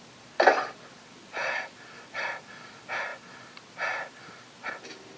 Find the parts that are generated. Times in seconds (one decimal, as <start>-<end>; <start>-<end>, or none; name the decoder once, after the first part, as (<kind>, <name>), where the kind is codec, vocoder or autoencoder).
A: none